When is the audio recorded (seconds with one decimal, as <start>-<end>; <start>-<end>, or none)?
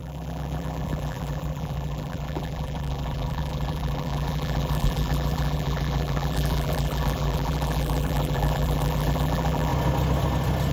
9.7-10.7